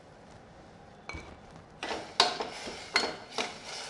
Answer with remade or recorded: recorded